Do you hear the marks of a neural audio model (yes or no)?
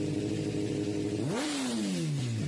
no